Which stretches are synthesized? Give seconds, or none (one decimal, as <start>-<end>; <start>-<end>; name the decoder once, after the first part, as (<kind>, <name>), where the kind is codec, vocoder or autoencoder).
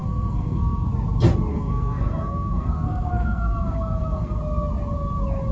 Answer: 0.0-0.9 (codec, SNAC); 1.5-4.4